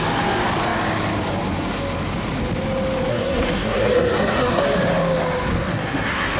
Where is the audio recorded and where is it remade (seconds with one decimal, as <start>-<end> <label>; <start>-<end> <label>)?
0.0-3.1 recorded; 3.1-4.6 remade; 4.6-5.5 recorded; 5.5-6.4 remade